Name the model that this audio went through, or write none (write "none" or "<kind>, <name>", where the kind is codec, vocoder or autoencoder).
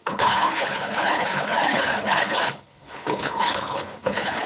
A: codec, HILCodec